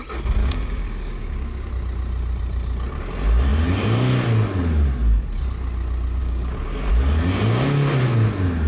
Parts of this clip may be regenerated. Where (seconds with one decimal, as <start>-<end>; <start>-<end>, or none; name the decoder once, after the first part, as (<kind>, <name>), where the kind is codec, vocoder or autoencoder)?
0.4-1.7 (codec, DAC); 6.2-6.9